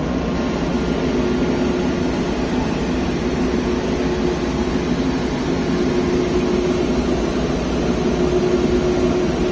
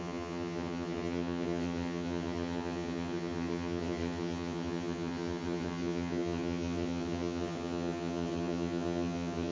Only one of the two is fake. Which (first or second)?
second